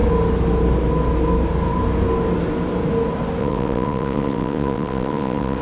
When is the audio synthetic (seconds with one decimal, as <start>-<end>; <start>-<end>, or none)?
3.4-5.6